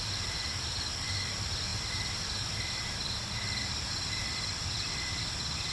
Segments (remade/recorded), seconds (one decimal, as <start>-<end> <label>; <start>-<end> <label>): 0.0-5.7 recorded